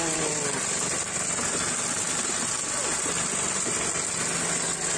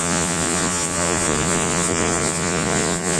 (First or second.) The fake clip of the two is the second